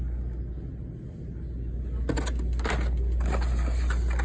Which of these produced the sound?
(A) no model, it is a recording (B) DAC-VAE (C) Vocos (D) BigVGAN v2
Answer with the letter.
A